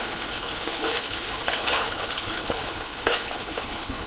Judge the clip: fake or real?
fake